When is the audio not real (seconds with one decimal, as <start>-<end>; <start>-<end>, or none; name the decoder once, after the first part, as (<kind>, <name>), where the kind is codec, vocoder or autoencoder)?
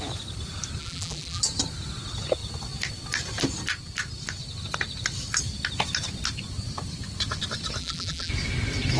0.8-1.4 (vocoder, BigVGAN v2); 7.8-8.3